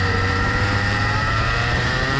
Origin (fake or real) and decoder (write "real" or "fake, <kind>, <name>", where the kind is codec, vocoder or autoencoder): fake, vocoder, BigVGAN v2